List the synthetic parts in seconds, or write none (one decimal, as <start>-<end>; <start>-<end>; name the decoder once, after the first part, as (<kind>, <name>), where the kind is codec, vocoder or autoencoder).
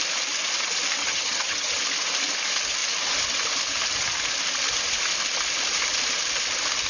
1.0-1.8 (vocoder, HiFi-GAN)